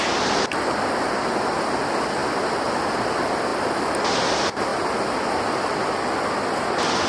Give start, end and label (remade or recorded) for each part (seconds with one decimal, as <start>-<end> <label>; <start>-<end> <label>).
0.0-7.1 recorded